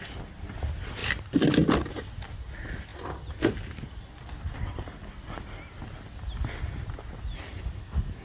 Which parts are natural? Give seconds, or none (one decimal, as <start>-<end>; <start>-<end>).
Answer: 0.0-8.2